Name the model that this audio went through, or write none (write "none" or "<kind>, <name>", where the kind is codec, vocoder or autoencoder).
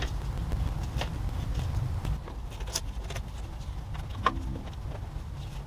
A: none